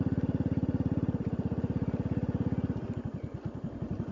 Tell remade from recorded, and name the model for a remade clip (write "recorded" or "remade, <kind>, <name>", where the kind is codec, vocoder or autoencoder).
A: recorded